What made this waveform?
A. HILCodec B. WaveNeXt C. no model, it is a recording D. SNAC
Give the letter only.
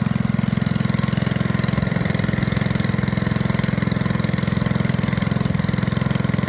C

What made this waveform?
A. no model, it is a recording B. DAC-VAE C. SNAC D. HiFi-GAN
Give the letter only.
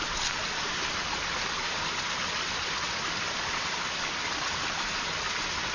A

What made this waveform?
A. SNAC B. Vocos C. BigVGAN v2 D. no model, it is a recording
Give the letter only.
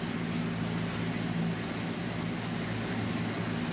D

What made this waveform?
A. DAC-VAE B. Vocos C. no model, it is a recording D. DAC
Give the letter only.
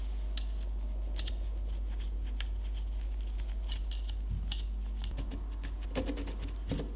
C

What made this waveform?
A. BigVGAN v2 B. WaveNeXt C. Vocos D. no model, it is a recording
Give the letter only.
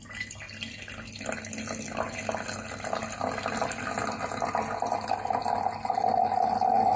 D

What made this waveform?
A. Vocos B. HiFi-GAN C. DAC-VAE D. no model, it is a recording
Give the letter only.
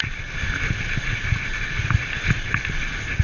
D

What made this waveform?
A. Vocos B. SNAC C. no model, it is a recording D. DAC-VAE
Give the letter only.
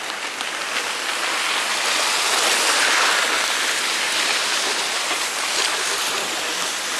C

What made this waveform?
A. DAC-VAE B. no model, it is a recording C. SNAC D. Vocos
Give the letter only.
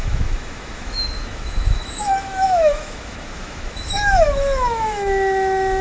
A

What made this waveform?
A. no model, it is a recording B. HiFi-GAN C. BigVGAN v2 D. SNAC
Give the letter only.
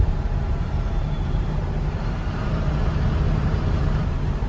C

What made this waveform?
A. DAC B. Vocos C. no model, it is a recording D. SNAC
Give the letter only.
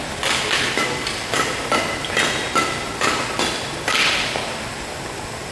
C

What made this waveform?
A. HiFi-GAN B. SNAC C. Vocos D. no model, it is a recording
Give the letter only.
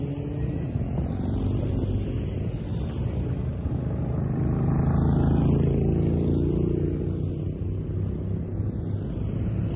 D